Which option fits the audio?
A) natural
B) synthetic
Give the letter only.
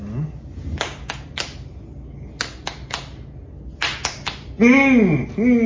A